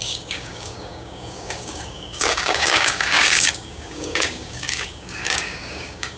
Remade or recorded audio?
remade